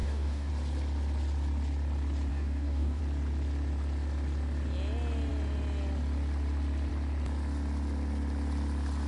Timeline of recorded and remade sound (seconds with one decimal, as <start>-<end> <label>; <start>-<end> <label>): 0.0-0.5 remade; 0.5-2.3 recorded; 2.3-3.0 remade; 3.0-9.1 recorded